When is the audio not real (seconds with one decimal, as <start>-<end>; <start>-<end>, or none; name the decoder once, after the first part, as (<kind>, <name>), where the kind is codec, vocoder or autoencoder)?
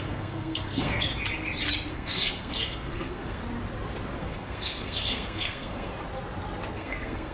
0.0-1.1 (codec, SNAC); 1.9-3.4; 4.2-5.9; 6.7-7.3